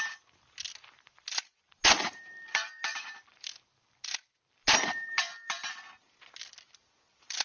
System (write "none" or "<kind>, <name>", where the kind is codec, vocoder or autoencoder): none